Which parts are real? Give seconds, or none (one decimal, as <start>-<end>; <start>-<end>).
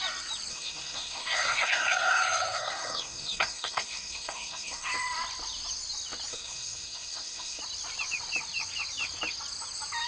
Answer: 0.0-0.5; 4.9-6.3; 7.6-10.1